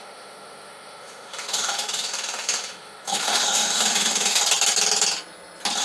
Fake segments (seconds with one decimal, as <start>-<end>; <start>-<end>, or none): 0.0-4.4